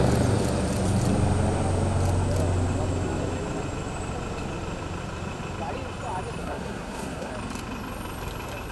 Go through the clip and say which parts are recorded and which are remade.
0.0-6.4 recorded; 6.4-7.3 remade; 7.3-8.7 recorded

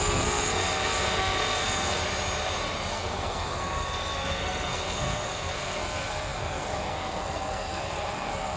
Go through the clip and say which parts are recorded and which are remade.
0.0-2.0 remade; 2.0-2.9 recorded; 2.9-8.6 remade